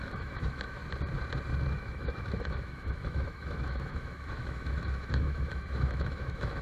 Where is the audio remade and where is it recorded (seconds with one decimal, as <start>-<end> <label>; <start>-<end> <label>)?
0.0-0.8 remade; 0.8-1.7 recorded; 1.7-6.6 remade